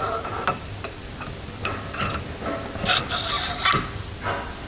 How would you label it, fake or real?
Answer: real